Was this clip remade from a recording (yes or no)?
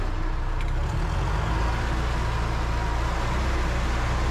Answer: no